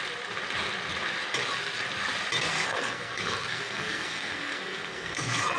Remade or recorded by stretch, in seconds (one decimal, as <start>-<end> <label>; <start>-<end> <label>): 0.0-2.5 recorded; 2.5-5.6 remade